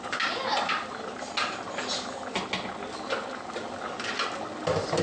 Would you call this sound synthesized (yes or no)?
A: no